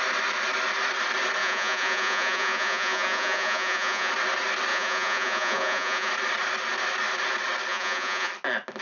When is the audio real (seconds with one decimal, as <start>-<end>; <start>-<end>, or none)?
0.0-1.4; 4.1-4.7; 6.1-7.7; 8.3-8.8